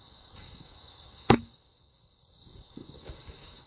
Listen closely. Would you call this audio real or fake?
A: fake